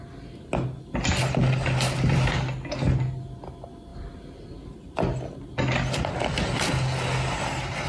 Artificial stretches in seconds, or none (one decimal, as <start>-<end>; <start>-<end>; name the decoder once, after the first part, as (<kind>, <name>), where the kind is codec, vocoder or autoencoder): none